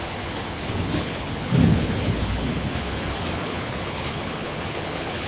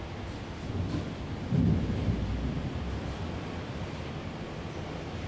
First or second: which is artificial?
first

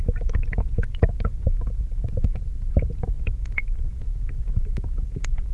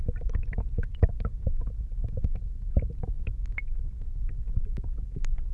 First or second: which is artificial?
first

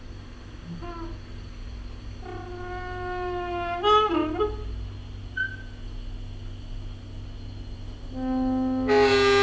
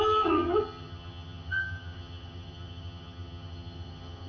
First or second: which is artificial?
second